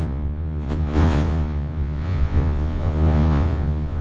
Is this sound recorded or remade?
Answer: remade